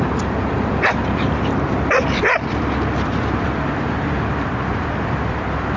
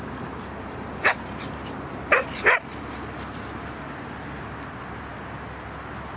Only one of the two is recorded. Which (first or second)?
second